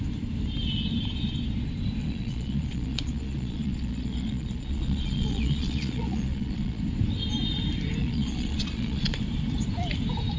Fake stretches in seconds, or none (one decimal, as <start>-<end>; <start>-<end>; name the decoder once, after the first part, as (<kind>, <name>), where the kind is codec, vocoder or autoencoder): 2.0-6.8 (vocoder, Vocos); 8.0-9.2